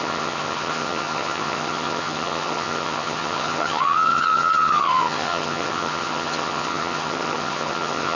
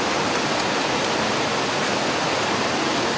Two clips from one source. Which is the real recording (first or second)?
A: second